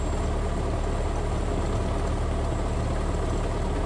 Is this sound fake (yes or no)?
no